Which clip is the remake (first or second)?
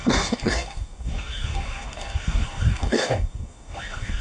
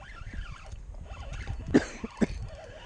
first